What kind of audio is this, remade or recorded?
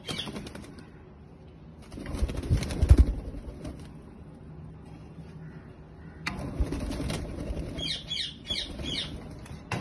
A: recorded